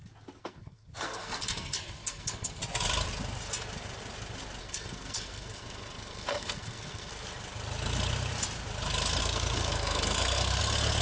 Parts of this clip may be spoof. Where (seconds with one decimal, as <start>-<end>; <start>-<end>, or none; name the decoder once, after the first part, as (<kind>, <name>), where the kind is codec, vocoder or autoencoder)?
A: 0.4-2.6 (codec, SNAC); 4.6-7.1; 9.2-10.6